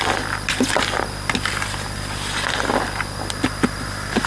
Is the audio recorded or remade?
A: recorded